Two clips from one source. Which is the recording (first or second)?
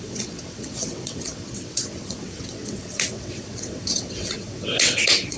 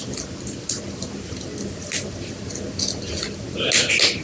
second